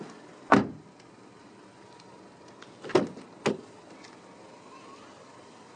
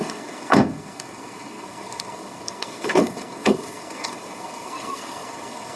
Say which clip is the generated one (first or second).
second